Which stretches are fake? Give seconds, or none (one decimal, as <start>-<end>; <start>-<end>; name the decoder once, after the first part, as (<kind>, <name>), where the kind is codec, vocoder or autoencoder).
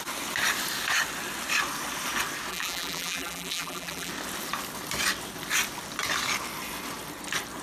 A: 2.5-4.1 (vocoder, BigVGAN v2)